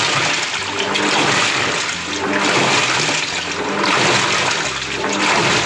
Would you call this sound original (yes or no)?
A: yes